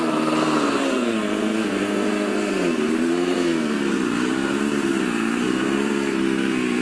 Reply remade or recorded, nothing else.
remade